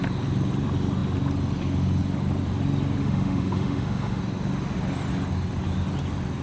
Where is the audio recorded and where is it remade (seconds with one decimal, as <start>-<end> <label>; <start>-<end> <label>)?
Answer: 0.0-3.0 recorded; 3.0-4.2 remade; 4.2-6.4 recorded